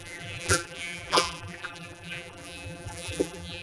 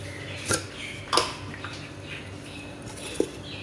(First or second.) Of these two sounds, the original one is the second